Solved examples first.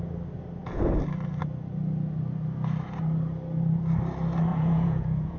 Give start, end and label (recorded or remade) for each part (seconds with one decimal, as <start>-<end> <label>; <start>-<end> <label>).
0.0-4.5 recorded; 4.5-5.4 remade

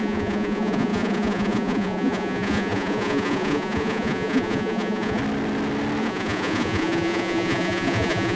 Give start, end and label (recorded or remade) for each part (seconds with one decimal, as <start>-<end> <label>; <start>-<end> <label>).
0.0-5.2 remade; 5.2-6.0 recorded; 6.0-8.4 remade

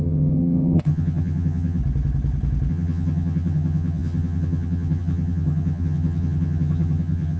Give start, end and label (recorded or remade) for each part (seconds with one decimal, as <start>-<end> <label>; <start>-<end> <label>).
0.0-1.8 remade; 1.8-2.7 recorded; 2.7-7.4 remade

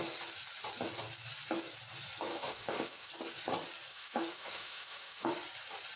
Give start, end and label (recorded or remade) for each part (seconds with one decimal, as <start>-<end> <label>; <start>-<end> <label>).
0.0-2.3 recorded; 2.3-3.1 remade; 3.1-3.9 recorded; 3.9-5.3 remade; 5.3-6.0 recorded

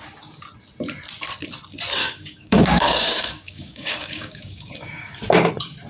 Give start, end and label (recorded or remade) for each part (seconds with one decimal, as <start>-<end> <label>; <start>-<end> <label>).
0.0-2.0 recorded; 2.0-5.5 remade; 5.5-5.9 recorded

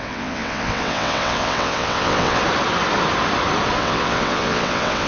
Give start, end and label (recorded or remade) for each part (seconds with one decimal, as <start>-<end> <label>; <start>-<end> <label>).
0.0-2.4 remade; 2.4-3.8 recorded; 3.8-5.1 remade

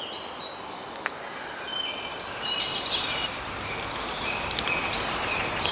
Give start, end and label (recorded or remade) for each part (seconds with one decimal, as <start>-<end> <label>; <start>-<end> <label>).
0.0-5.7 recorded

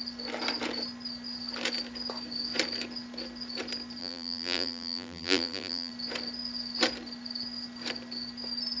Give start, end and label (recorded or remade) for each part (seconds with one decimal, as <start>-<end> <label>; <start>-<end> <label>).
0.0-4.0 recorded; 4.0-5.9 remade; 5.9-8.8 recorded